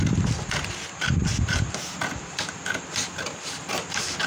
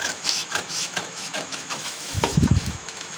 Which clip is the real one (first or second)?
first